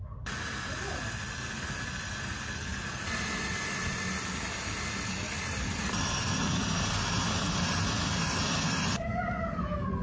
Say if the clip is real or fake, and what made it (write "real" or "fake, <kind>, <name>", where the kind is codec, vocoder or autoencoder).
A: real